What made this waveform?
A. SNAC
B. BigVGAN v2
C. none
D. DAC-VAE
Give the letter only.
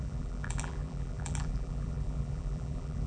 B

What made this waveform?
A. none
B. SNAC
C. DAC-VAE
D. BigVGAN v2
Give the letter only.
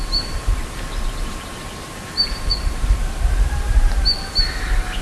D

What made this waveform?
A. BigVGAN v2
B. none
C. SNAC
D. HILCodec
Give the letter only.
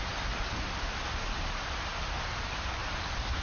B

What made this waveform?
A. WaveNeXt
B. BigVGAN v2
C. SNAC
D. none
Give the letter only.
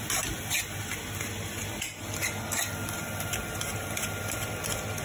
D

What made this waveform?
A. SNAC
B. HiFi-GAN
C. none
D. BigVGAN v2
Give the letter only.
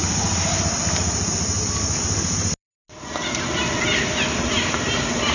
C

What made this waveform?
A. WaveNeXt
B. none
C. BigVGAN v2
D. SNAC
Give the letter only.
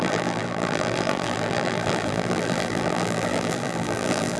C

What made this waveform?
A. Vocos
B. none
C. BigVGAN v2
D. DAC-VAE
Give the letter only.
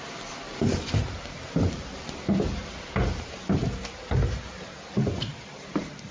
C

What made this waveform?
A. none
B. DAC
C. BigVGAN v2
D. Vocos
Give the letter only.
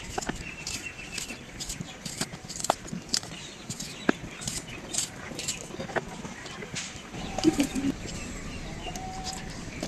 C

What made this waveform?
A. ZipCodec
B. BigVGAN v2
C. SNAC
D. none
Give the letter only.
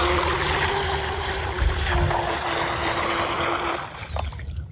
D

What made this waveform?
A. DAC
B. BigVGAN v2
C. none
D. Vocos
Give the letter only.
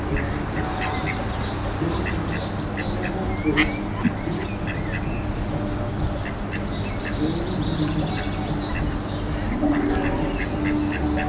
C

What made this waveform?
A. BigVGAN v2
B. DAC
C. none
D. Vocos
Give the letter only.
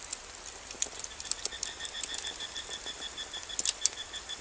A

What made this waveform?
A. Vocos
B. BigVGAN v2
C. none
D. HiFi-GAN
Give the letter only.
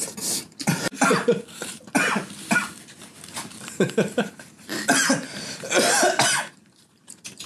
B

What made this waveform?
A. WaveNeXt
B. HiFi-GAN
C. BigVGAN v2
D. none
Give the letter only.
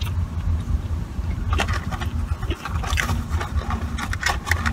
C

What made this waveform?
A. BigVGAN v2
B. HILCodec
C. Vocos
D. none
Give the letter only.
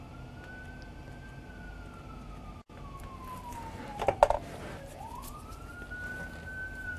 D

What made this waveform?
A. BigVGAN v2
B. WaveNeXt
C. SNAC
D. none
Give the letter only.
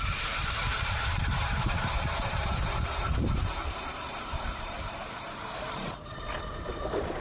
A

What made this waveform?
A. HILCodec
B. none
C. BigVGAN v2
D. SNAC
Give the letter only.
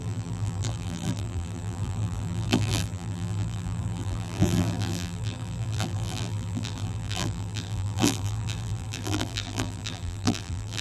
C